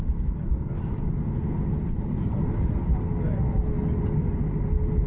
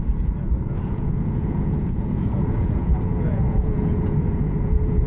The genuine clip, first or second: first